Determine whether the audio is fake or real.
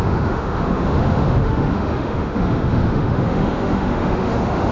fake